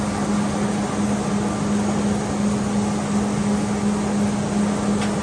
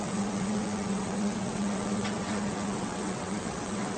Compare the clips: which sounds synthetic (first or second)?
second